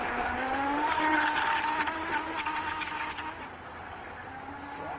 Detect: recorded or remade recorded